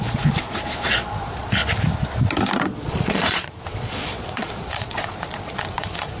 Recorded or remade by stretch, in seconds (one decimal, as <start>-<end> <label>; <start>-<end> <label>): 0.0-1.6 remade; 1.6-2.6 recorded; 2.6-6.2 remade